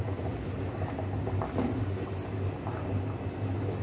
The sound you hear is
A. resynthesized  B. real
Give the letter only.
B